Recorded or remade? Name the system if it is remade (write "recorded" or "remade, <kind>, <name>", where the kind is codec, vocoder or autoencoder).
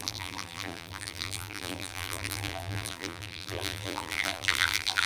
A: remade, vocoder, BigVGAN v2